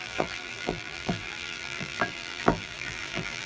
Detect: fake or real fake